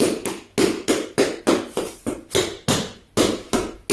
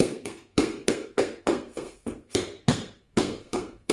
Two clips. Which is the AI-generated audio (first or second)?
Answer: second